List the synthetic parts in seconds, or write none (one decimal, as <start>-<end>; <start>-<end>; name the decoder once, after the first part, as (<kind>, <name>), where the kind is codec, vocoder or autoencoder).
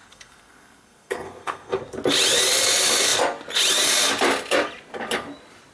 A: 0.0-1.8 (codec, SNAC)